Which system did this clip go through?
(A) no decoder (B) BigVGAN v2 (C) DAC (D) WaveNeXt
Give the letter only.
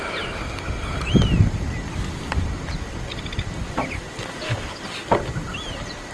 A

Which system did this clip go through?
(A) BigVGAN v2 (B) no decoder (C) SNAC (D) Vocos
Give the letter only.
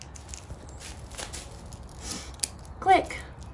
B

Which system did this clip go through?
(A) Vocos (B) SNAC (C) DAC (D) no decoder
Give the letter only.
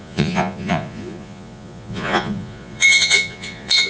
A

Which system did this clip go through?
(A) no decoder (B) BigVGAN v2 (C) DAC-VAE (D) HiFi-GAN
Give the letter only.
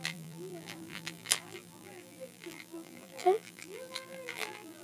B